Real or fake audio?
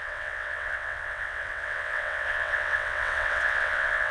fake